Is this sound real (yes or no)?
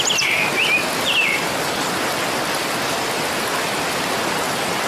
yes